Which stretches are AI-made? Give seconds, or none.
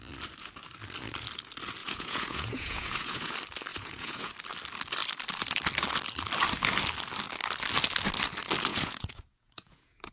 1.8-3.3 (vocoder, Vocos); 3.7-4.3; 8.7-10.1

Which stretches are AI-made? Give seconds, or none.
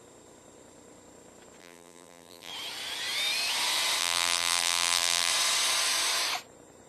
1.6-2.5 (vocoder, BigVGAN v2); 4.0-5.3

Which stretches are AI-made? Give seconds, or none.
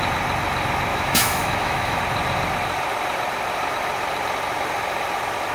0.9-2.0 (autoencoder, DAC-VAE)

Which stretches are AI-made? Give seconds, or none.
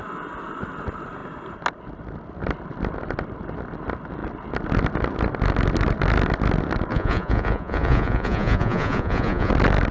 6.9-9.5 (vocoder, Vocos)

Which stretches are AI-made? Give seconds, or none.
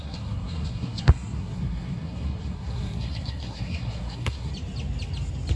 0.0-4.5 (codec, SNAC)